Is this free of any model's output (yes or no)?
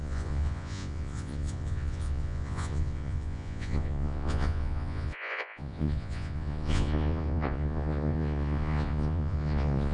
no